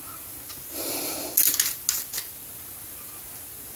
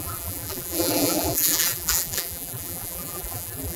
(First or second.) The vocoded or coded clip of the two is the second